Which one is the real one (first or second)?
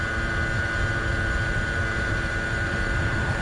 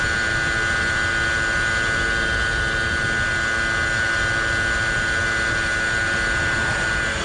second